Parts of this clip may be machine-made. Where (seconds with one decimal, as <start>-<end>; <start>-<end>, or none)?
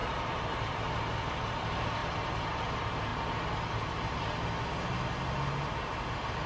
0.0-0.7; 2.0-2.6